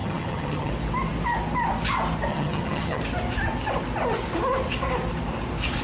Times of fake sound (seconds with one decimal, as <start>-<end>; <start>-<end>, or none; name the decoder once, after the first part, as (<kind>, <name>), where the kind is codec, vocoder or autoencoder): 0.0-0.7 (vocoder, HiFi-GAN); 2.3-3.0

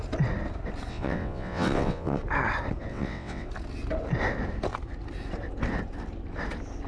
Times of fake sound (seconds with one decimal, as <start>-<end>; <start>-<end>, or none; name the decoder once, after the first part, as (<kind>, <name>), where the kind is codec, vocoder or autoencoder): 0.9-2.2 (vocoder, WaveNeXt); 2.9-3.5